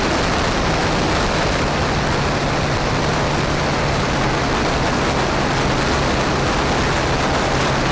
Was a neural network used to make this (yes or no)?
no